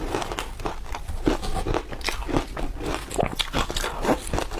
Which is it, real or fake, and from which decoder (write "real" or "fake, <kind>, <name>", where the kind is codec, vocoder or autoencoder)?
real